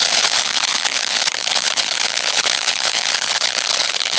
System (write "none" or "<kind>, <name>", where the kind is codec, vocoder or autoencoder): codec, HILCodec